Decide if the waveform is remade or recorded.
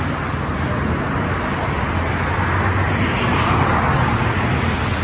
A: recorded